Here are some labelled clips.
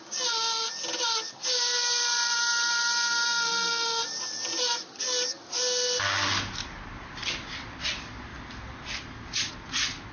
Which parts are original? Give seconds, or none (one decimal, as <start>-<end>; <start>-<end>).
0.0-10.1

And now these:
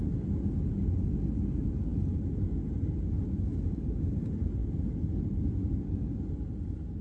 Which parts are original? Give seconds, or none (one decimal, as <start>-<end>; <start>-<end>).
0.0-7.0

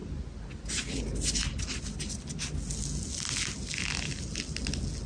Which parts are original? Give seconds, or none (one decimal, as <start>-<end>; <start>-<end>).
0.0-5.1

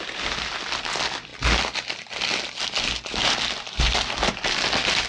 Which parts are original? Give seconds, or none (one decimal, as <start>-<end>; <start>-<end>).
0.0-5.1

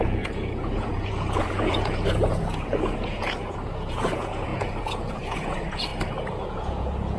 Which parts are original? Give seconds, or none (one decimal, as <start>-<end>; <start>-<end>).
5.9-6.5